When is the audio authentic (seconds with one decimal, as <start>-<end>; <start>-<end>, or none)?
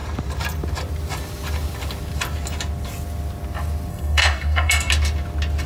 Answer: 0.0-3.9; 4.9-5.7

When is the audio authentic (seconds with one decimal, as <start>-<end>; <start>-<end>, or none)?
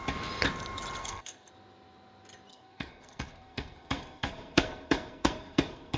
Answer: 0.0-1.0; 1.5-2.5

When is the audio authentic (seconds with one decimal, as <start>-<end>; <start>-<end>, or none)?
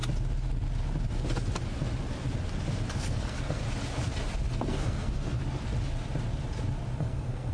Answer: 0.0-3.0; 3.6-4.5; 5.4-7.0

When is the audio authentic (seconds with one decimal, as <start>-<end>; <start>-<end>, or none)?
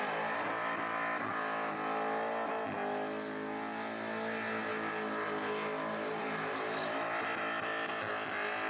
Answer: 0.0-8.7